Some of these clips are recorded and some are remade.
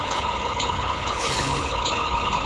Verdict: remade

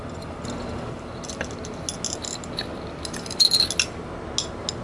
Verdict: recorded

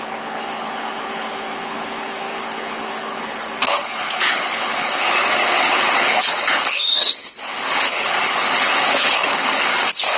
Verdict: remade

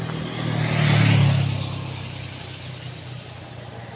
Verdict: recorded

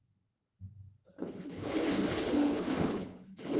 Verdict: remade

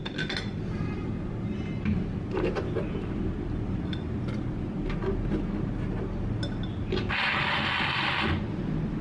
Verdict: recorded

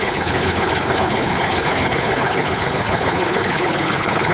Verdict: remade